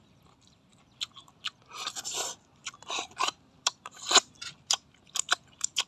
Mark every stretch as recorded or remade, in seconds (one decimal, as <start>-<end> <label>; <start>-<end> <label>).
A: 0.0-5.9 recorded